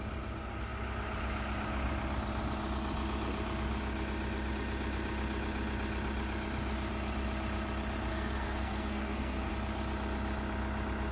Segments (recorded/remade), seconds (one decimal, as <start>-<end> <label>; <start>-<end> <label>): 0.0-8.1 recorded; 8.1-9.5 remade; 9.5-11.1 recorded